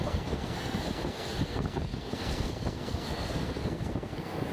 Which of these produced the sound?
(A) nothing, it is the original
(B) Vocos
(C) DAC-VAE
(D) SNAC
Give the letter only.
D